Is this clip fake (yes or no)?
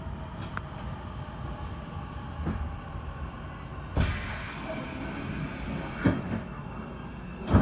no